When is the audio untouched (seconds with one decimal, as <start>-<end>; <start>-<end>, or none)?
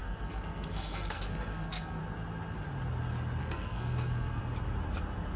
2.0-3.4; 4.4-5.4